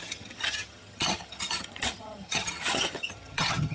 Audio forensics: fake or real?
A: fake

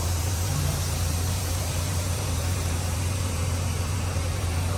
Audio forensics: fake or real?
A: fake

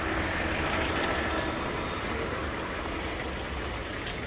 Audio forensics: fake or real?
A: real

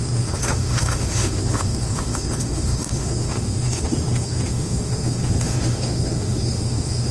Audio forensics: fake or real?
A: fake